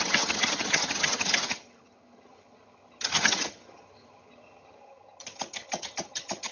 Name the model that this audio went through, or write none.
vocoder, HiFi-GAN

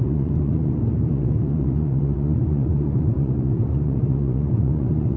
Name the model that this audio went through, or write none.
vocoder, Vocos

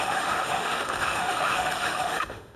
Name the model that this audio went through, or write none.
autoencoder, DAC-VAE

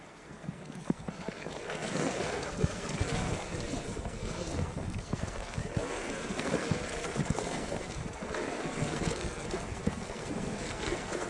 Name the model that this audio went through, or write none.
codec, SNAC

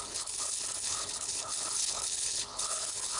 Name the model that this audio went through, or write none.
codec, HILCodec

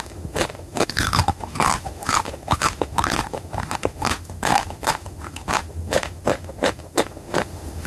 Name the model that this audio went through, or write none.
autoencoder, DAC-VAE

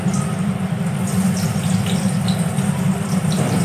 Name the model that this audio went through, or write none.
none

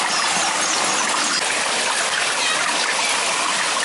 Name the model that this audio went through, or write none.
none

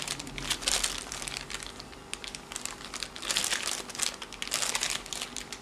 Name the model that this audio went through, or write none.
none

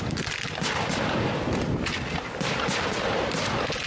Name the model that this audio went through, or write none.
none